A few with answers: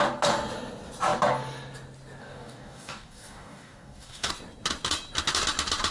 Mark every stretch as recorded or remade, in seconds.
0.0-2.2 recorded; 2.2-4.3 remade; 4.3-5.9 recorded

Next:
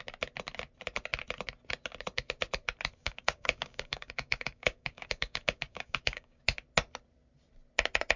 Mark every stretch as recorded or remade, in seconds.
0.0-3.0 recorded; 3.0-6.4 remade; 6.4-8.2 recorded

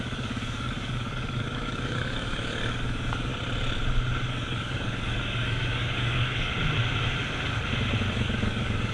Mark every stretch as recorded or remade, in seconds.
0.0-3.3 remade; 3.3-4.3 recorded; 4.3-6.5 remade; 6.5-8.1 recorded; 8.1-8.9 remade

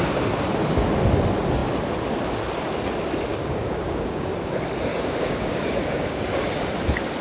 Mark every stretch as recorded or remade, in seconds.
0.0-3.3 recorded; 3.3-4.5 remade; 4.5-4.9 recorded; 4.9-6.7 remade; 6.7-7.2 recorded

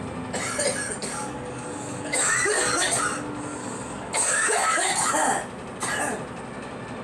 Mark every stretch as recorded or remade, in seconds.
0.0-1.0 recorded; 1.0-3.0 remade; 3.0-3.6 recorded; 3.6-5.1 remade; 5.1-7.0 recorded

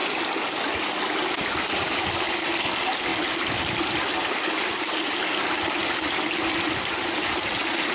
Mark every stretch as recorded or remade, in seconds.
0.0-7.9 recorded